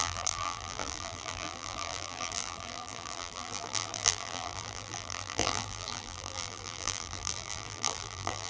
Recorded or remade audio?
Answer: remade